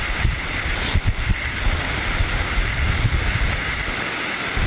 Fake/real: real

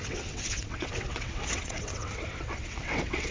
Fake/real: fake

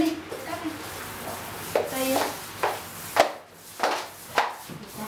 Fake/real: real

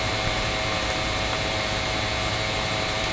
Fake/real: fake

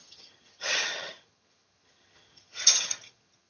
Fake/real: fake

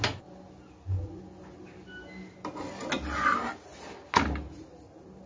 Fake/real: real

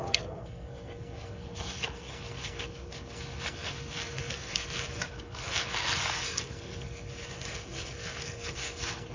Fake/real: fake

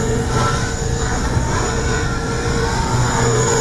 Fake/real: fake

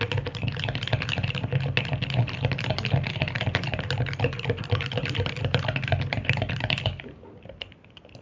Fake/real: real